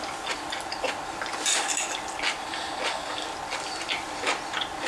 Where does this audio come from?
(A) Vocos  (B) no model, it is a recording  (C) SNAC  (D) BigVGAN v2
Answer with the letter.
B